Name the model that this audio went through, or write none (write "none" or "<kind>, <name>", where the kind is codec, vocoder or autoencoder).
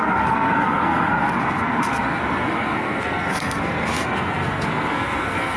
codec, SNAC